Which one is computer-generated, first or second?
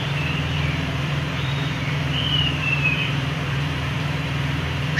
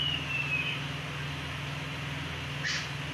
first